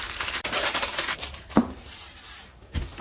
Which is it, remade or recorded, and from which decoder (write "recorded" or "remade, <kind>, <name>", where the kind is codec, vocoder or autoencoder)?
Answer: remade, vocoder, BigVGAN v2